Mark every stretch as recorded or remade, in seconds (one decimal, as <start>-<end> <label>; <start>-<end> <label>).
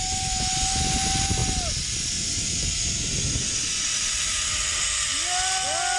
0.0-6.0 recorded